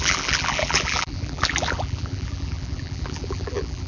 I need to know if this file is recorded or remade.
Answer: remade